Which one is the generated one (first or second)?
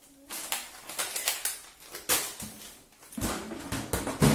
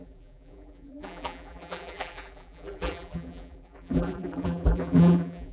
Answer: second